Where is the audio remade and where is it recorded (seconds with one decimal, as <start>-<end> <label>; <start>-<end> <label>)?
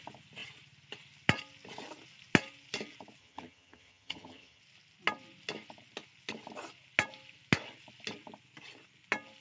0.0-3.2 recorded; 3.2-4.6 remade; 4.6-9.4 recorded